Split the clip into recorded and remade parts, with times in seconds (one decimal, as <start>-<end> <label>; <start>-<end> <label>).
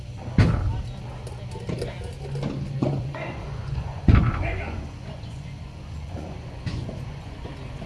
0.0-2.8 recorded; 2.8-7.5 remade; 7.5-7.9 recorded